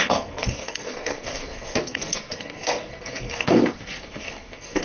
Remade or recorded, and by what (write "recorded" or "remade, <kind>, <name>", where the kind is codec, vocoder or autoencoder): remade, codec, SNAC